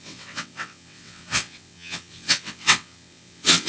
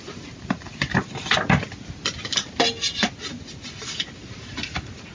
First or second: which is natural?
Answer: second